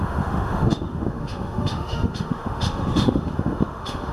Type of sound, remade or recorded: remade